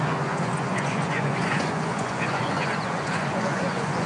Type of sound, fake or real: fake